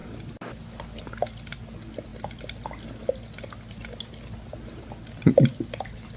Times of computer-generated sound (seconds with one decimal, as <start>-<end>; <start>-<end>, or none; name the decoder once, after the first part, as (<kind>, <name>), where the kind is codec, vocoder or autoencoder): none